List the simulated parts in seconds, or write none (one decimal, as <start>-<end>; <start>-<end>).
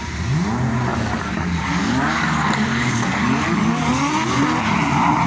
0.9-4.1